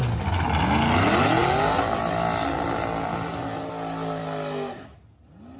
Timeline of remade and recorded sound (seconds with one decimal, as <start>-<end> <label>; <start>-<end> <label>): 0.0-5.6 recorded